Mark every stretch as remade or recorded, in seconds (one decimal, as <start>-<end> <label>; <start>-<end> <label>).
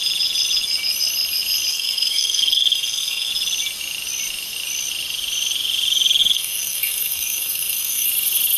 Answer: 0.0-1.7 recorded; 1.7-3.3 remade; 3.3-6.2 recorded; 6.2-8.1 remade; 8.1-8.6 recorded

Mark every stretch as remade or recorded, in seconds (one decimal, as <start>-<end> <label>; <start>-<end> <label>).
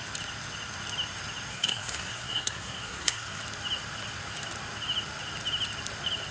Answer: 0.0-1.5 recorded; 1.5-3.4 remade; 3.4-6.3 recorded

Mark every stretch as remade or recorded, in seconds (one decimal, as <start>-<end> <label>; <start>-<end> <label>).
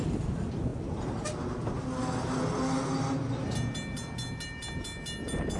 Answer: 0.0-5.6 recorded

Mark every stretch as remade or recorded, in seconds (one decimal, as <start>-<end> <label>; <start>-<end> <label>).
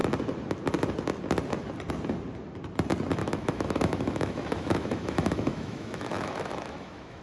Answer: 0.0-3.2 recorded; 3.2-7.2 remade